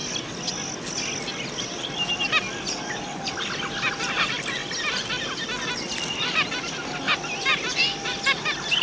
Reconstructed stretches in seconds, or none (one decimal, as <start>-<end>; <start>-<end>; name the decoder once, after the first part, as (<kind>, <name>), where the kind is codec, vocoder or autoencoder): 2.8-4.6 (vocoder, BigVGAN v2); 6.1-6.8; 7.6-8.8